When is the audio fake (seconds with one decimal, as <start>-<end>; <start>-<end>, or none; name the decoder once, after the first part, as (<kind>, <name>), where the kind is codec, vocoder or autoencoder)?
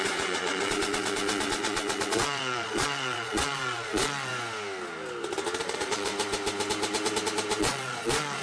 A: 0.0-4.3 (vocoder, Vocos); 5.6-6.1; 7.6-8.4